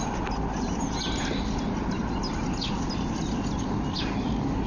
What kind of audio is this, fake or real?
real